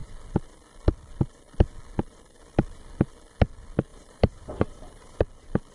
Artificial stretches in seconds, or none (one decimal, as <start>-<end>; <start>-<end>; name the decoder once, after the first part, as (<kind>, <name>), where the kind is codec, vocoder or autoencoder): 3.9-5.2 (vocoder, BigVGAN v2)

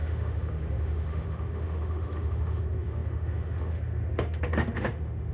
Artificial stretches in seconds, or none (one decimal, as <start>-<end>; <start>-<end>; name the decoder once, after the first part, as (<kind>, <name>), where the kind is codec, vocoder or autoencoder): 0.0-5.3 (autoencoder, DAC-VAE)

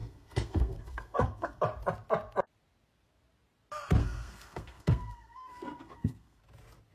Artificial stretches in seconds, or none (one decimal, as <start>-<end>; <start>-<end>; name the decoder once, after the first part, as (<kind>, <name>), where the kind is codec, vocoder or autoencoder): 0.0-1.6 (codec, SNAC); 4.0-6.4

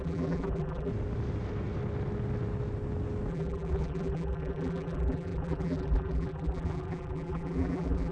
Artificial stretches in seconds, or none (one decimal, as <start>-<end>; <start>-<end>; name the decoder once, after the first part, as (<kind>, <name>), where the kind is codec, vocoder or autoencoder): 0.0-0.9 (vocoder, BigVGAN v2); 3.3-8.1

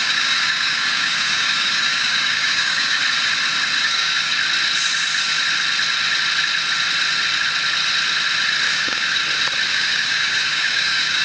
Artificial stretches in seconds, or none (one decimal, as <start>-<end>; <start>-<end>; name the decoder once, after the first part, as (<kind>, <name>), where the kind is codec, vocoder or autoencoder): 0.0-3.0 (codec, DAC); 3.8-4.3; 8.7-9.2; 9.7-11.2